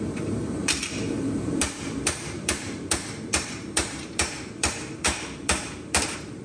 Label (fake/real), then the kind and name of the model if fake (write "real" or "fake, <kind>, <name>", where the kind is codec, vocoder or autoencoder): fake, vocoder, BigVGAN v2